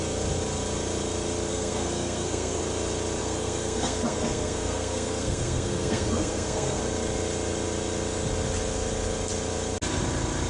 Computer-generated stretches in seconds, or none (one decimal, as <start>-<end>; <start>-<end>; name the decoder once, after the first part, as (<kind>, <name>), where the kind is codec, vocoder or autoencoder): 1.5-2.6 (codec, SNAC); 3.2-6.8